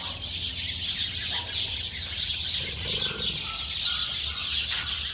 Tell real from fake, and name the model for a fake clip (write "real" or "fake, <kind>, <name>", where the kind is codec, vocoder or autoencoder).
real